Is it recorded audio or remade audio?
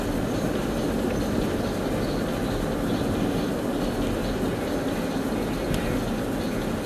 recorded